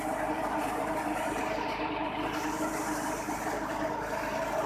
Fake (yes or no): no